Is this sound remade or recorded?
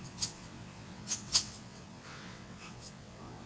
remade